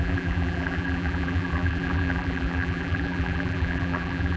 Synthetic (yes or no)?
yes